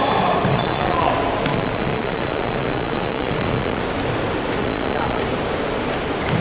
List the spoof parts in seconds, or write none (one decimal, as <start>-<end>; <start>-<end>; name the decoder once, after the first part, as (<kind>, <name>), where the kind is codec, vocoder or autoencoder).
0.5-1.1 (vocoder, Vocos); 1.5-3.8; 4.6-5.2